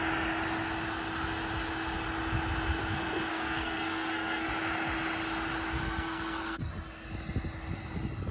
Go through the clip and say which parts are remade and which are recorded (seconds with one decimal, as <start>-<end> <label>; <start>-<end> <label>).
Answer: 0.0-3.3 recorded; 3.3-4.5 remade; 4.5-5.8 recorded; 5.8-6.7 remade; 6.7-8.3 recorded